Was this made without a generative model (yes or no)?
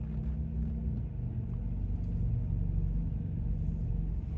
yes